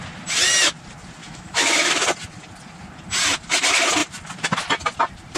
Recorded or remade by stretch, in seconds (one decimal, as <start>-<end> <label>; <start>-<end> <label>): 0.0-1.2 recorded; 1.2-1.9 remade; 1.9-5.4 recorded